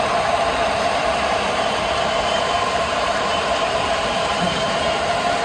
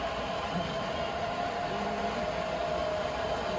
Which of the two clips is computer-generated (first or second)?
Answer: first